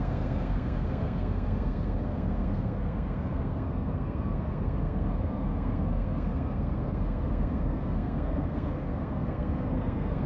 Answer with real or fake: fake